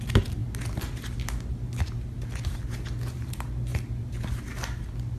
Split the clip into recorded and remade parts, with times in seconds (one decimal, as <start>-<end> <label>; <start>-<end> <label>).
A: 0.0-5.2 recorded